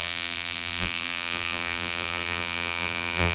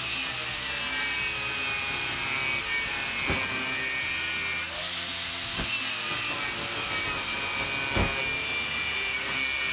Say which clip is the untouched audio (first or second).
second